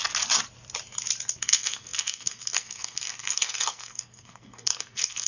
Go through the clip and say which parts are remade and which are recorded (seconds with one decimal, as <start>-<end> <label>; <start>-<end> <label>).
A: 0.0-1.4 recorded; 1.4-5.3 remade